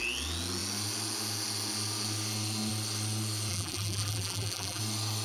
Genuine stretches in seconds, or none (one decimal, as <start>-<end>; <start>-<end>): 0.0-3.5; 4.8-5.2